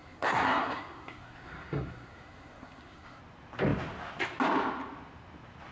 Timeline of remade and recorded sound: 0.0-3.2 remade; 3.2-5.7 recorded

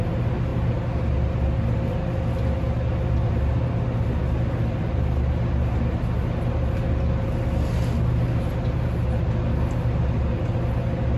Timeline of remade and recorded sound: 0.0-11.2 recorded

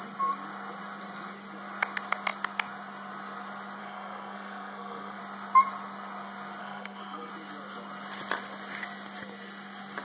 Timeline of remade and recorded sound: 0.0-3.8 recorded; 3.8-5.2 remade; 5.2-6.6 recorded; 6.6-7.3 remade; 7.3-10.0 recorded

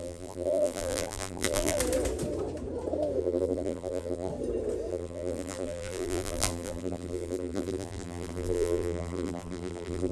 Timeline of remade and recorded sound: 0.0-1.8 remade; 1.8-3.2 recorded; 3.2-4.3 remade; 4.3-4.9 recorded; 4.9-10.1 remade

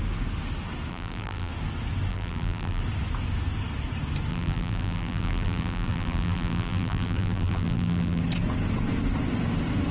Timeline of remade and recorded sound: 0.0-0.9 recorded; 0.9-1.5 remade; 1.5-2.1 recorded; 2.1-2.8 remade; 2.8-4.3 recorded; 4.3-8.2 remade; 8.2-9.9 recorded

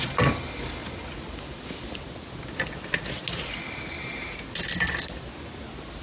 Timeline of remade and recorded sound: 0.0-6.0 recorded

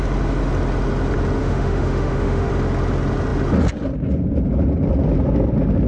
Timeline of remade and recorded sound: 0.0-1.4 recorded; 1.4-2.5 remade; 2.5-5.9 recorded